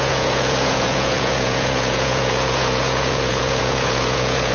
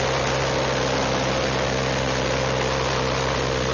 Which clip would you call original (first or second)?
second